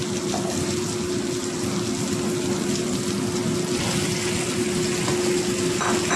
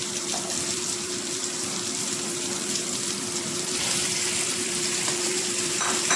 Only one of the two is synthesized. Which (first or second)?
second